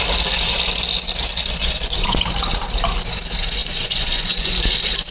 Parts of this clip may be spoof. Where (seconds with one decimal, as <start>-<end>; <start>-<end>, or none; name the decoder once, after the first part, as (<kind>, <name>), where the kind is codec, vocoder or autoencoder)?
1.6-2.2 (vocoder, Vocos); 3.6-4.5